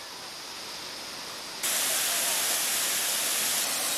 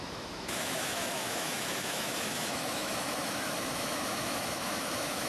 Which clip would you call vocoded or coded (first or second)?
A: second